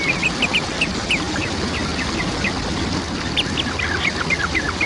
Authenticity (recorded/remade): recorded